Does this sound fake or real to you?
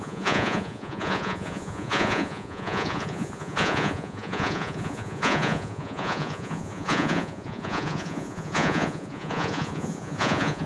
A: fake